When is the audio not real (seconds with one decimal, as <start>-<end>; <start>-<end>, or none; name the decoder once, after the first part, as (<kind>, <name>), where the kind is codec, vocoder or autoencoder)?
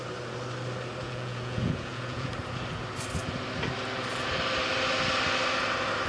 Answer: 1.0-2.3 (vocoder, Vocos)